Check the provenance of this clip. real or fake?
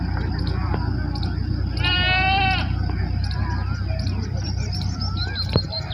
real